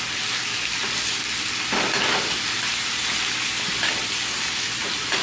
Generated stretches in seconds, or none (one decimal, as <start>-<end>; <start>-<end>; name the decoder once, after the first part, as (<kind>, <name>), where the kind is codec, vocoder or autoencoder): none